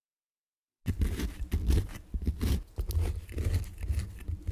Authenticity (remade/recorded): recorded